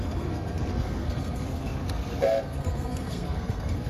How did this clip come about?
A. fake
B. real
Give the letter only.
A